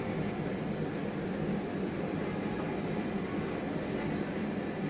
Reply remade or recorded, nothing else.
recorded